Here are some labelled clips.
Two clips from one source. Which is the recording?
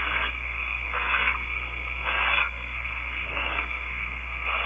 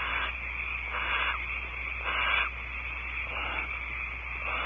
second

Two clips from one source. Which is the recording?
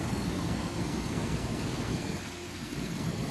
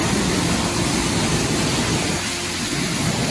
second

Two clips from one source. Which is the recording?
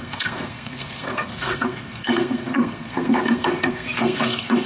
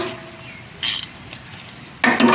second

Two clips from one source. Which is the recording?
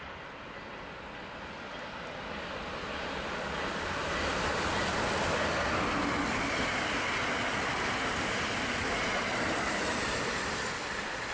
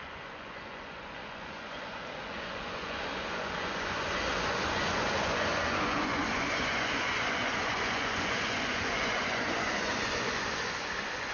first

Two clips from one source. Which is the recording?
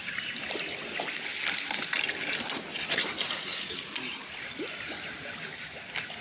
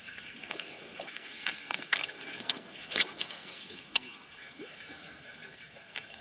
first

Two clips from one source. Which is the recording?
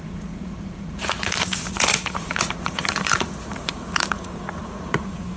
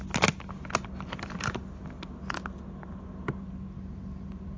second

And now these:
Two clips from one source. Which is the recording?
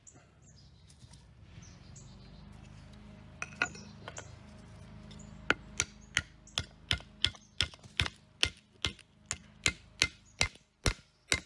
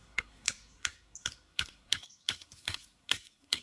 first